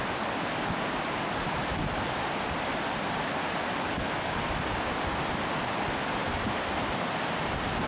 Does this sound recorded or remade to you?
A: recorded